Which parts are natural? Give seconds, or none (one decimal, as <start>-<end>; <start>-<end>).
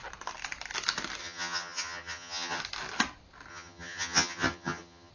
0.0-1.2; 2.6-3.5